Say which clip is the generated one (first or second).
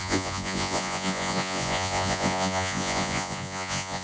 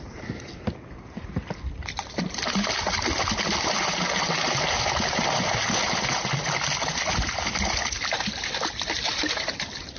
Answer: first